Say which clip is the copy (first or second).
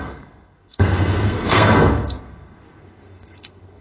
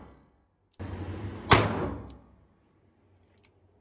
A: first